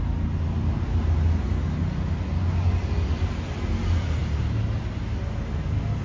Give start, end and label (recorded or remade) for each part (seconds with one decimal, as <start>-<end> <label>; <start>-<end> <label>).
0.0-6.0 recorded